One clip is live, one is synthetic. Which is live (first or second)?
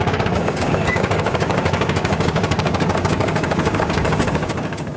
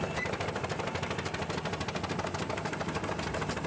second